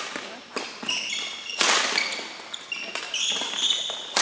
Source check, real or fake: real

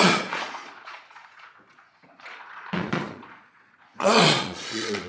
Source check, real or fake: fake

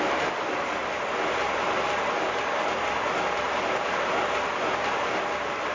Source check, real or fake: real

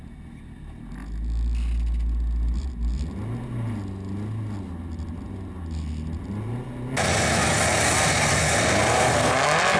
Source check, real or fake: real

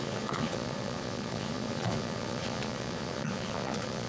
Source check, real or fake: fake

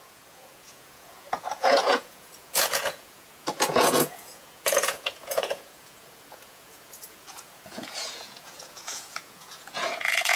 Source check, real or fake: fake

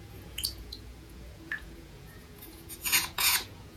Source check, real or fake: fake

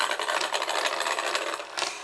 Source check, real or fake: real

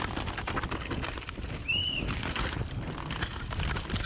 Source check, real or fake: real